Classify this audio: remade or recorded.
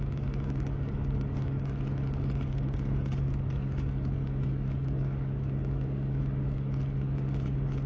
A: remade